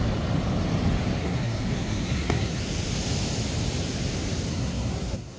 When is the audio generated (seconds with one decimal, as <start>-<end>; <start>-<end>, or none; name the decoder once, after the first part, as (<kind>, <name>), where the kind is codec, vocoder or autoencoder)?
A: 1.2-2.6 (codec, SNAC); 4.5-5.4